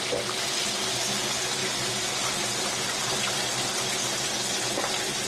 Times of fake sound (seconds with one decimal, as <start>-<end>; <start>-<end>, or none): none